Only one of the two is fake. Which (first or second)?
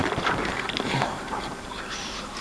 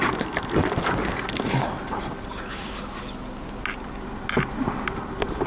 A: first